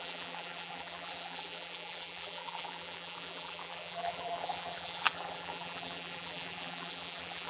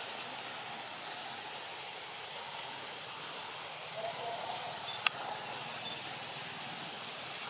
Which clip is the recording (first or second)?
second